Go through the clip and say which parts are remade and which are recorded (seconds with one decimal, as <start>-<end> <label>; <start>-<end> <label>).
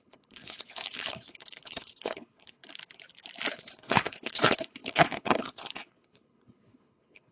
0.0-2.6 remade; 2.6-3.5 recorded; 3.5-7.3 remade